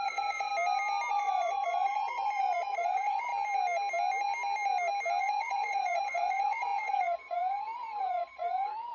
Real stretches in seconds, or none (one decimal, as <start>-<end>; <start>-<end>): 0.5-1.1; 3.3-5.2